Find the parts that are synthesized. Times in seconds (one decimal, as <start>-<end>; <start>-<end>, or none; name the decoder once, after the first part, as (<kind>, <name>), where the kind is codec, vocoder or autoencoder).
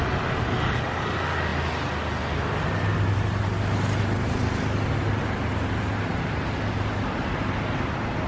none